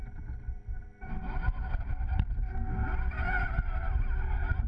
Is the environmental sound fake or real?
real